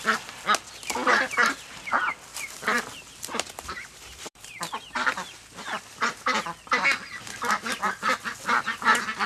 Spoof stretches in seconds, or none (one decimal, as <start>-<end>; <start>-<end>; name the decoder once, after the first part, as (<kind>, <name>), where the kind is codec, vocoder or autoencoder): 2.3-5.4 (vocoder, BigVGAN v2)